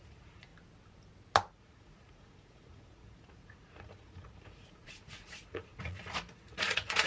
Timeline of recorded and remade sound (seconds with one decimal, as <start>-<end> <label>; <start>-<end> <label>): 0.0-0.5 remade; 0.5-1.5 recorded; 1.5-7.1 remade